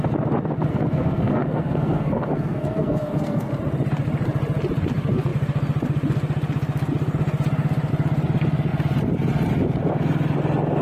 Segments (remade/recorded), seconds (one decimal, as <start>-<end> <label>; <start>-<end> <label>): 0.0-0.7 recorded; 0.7-3.5 remade; 3.5-10.8 recorded

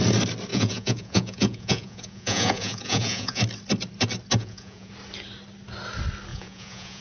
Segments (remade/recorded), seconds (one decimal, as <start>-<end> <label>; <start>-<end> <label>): 0.0-0.5 recorded; 0.5-3.4 remade; 3.4-4.4 recorded; 4.4-4.9 remade; 4.9-6.3 recorded; 6.3-7.0 remade